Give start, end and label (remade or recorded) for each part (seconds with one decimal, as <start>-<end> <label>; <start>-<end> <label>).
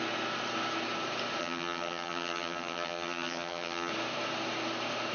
0.0-1.4 recorded; 1.4-3.9 remade; 3.9-5.1 recorded